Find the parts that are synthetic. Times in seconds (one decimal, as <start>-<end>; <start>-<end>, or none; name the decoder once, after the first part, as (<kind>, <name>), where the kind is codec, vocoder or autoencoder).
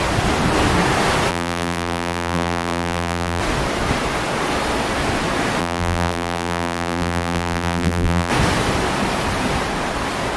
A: 1.3-3.4 (vocoder, BigVGAN v2); 5.6-8.3